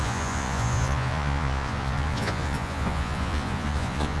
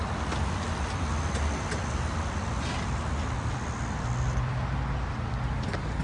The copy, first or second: first